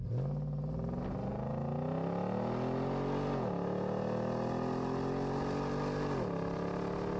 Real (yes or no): yes